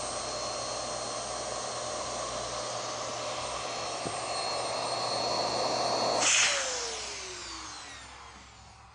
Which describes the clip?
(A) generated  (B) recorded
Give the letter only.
B